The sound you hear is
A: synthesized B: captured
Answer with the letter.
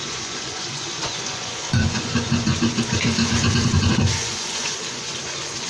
A